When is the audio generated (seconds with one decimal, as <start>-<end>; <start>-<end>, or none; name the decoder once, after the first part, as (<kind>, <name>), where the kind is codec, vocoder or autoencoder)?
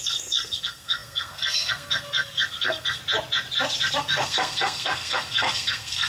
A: 0.0-3.0 (codec, SNAC); 4.0-6.1